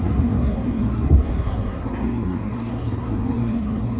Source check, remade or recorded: remade